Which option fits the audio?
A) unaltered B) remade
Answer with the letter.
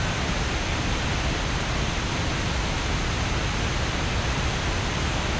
A